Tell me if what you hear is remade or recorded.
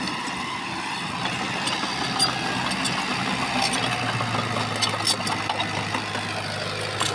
recorded